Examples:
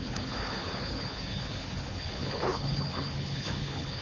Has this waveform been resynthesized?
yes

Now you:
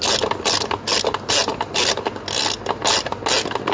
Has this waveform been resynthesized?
no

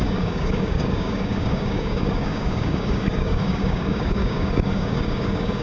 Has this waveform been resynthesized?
yes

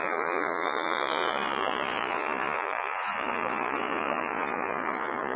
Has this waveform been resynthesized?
yes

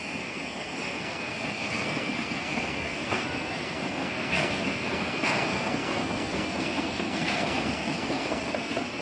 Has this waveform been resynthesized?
yes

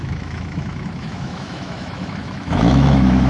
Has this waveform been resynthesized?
yes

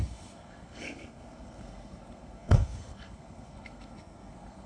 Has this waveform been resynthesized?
yes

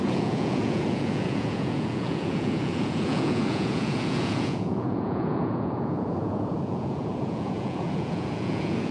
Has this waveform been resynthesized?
yes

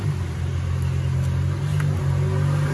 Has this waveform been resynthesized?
no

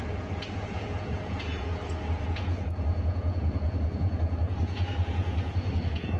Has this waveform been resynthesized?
yes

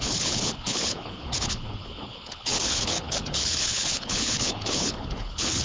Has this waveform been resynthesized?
yes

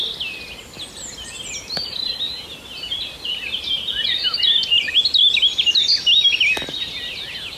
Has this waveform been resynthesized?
no